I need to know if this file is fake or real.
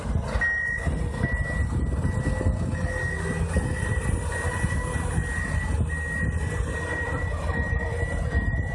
real